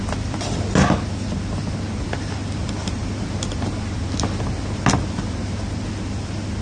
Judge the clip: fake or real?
real